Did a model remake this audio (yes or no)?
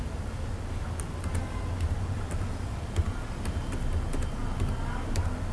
no